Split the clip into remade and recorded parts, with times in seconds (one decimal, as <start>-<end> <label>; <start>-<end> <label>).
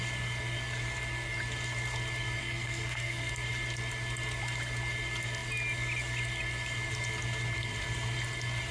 0.0-2.4 recorded; 2.4-3.3 remade; 3.3-8.7 recorded